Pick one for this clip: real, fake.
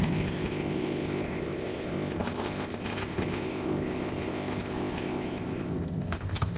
fake